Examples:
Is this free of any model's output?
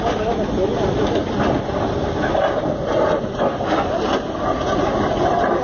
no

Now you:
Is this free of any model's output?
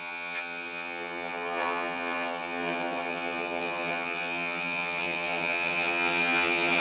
no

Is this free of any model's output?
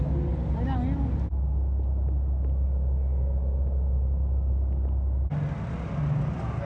yes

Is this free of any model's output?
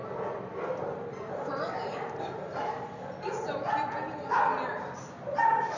yes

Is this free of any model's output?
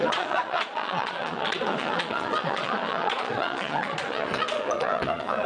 no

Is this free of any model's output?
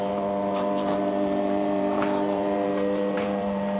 no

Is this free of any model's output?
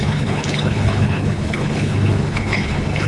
no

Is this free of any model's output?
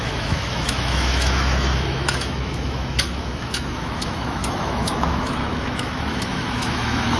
no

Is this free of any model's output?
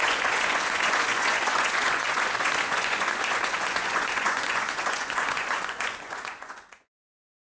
no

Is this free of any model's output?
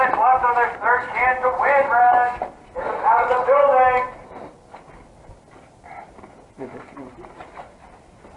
yes